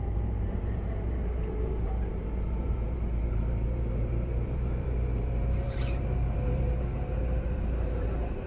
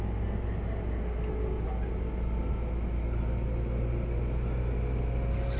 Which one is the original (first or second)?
second